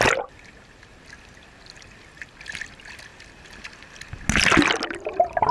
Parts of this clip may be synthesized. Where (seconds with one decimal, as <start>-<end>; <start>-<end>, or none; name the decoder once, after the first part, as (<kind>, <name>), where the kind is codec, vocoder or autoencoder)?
none